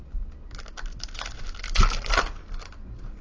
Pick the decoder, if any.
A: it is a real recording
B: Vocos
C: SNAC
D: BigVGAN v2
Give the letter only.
A